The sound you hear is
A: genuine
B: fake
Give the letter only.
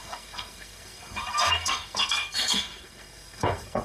B